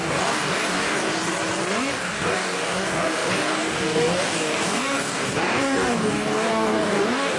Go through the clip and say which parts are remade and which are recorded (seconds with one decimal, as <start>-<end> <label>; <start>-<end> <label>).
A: 0.0-1.1 remade; 1.1-1.9 recorded; 1.9-7.4 remade